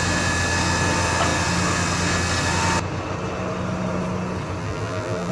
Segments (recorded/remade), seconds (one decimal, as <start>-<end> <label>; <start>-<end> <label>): 0.0-4.6 recorded; 4.6-5.3 remade